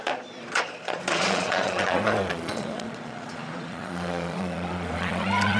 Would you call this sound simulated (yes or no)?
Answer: yes